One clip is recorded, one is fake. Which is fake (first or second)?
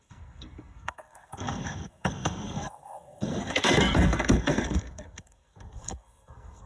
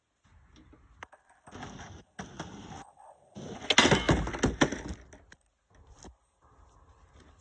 first